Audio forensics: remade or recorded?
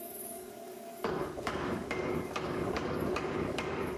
remade